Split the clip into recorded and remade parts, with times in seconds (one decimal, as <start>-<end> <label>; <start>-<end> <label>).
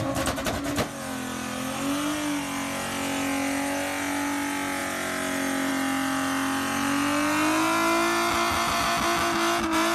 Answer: 0.0-9.9 recorded